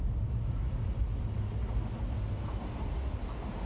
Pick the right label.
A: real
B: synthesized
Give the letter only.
A